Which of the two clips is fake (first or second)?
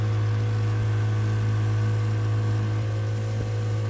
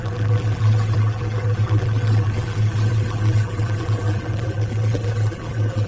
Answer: second